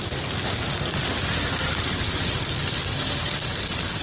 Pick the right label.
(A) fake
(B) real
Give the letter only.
B